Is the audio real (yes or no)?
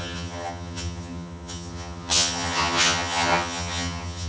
no